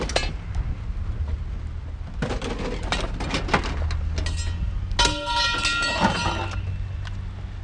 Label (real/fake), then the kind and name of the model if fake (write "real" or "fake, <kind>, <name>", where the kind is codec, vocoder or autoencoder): real